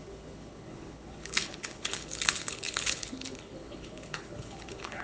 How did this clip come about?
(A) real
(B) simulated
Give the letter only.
B